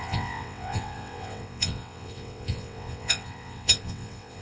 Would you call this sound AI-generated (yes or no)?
yes